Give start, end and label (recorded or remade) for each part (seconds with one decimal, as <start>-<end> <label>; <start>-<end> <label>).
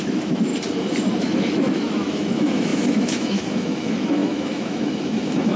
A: 0.0-0.5 remade; 0.5-1.2 recorded; 1.2-5.6 remade